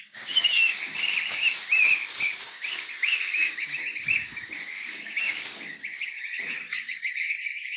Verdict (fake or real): fake